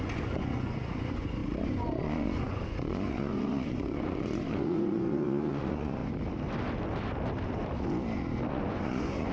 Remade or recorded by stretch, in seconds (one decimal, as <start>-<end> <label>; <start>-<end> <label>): 0.0-6.0 remade; 6.0-8.5 recorded; 8.5-9.3 remade